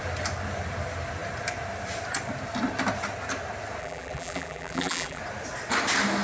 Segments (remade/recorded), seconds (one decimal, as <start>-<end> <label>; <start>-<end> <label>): 0.0-3.8 recorded; 3.8-5.2 remade; 5.2-6.2 recorded